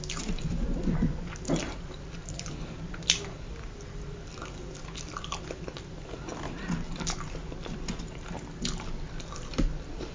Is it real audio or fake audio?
real